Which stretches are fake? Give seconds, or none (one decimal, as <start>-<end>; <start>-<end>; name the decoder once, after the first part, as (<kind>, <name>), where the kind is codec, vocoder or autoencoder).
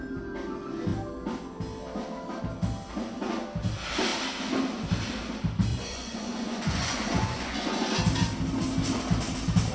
5.7-7.9 (vocoder, Vocos)